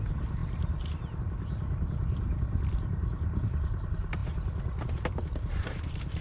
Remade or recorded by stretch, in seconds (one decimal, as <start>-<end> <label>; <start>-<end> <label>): 0.0-6.2 recorded